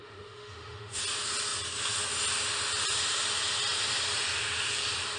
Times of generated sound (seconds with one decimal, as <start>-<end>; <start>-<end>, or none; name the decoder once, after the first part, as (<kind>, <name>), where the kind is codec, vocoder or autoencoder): 0.0-1.0 (autoencoder, DAC-VAE)